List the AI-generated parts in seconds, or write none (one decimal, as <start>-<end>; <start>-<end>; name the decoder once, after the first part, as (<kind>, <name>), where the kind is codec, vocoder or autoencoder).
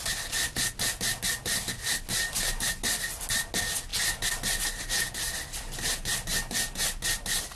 none